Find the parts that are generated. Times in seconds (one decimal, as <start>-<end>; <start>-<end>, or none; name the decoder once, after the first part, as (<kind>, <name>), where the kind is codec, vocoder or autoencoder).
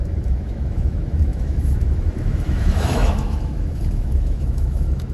0.0-5.1 (autoencoder, DAC-VAE)